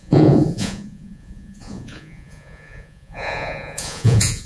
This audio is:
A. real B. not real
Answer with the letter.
B